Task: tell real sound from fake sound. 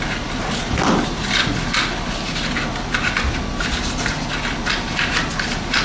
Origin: real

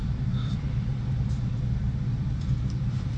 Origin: fake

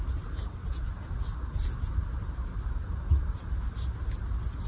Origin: real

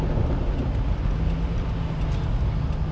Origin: real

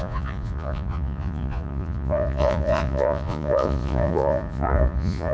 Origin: fake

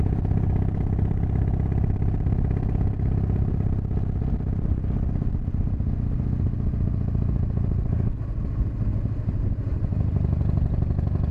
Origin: real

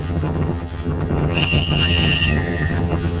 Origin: fake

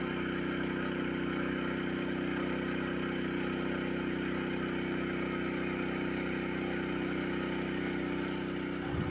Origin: real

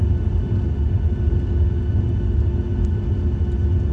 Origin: real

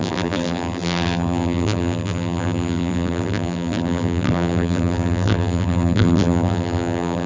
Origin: fake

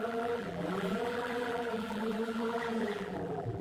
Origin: fake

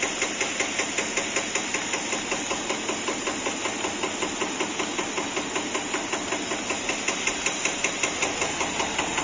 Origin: real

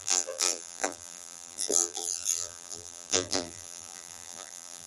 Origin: fake